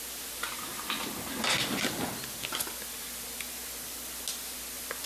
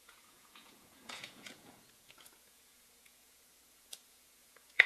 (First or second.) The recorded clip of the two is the first